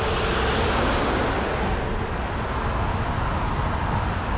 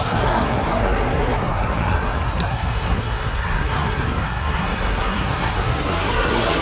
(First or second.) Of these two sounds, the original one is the first